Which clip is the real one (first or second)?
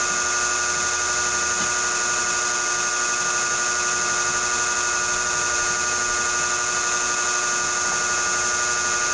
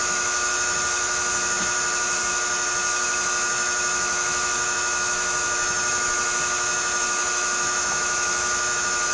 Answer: first